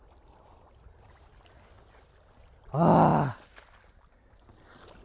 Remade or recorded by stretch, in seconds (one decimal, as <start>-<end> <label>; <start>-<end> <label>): 0.0-5.0 recorded